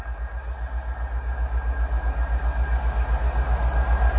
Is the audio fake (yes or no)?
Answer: no